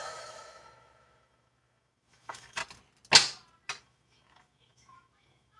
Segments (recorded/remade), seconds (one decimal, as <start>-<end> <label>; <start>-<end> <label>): 0.0-2.6 remade; 2.6-3.8 recorded; 3.8-5.6 remade